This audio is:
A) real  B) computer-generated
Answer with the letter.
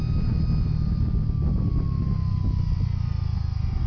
A